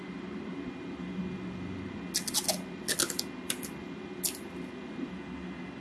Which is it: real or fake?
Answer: real